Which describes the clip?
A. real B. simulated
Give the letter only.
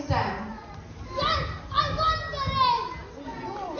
A